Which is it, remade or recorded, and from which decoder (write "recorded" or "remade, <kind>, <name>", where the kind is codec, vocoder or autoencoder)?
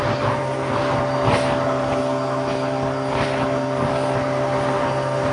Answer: recorded